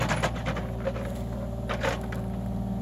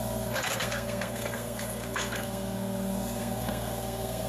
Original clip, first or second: first